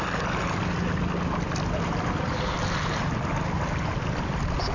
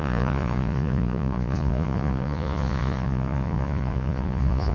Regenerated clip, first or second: second